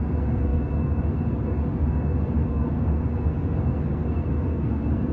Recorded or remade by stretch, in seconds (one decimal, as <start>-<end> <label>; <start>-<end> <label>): 0.0-5.1 remade

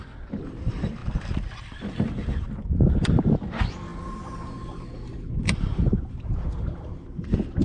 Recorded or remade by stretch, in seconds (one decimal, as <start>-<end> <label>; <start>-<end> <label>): 0.0-7.6 recorded